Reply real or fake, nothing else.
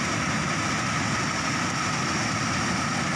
real